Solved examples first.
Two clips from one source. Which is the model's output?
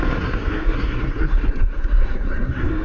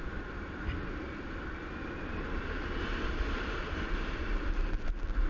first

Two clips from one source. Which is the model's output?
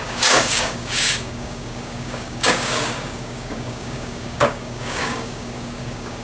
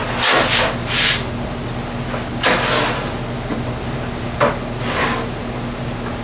first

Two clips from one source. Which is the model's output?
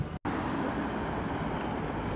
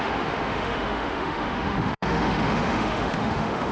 second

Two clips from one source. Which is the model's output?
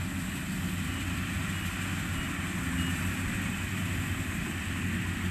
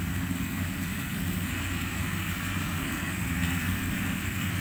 second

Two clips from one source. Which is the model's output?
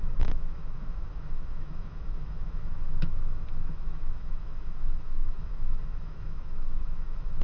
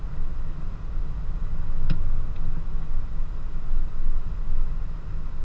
first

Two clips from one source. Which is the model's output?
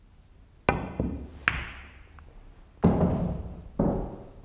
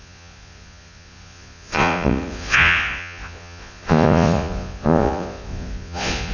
second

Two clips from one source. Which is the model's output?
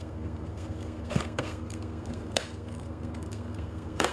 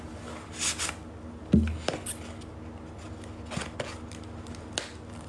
first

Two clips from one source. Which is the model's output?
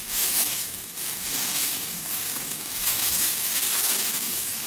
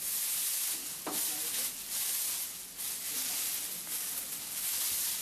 first